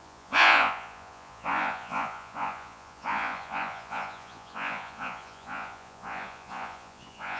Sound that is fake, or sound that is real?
fake